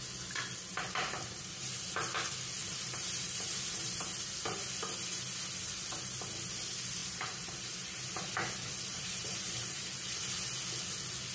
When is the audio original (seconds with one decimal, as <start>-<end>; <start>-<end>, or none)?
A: 0.0-0.7; 1.7-2.6; 4.0-7.0; 8.0-8.9; 9.9-11.3